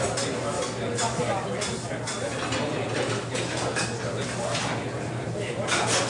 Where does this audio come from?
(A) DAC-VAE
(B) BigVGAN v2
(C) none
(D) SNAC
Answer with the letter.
C